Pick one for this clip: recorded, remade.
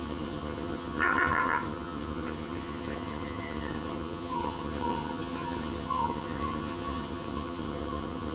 remade